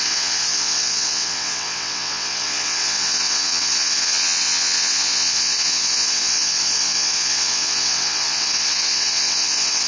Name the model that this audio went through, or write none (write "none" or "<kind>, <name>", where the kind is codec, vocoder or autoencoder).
vocoder, WaveNeXt